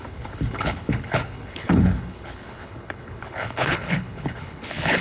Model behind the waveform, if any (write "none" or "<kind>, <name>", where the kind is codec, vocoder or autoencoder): codec, HILCodec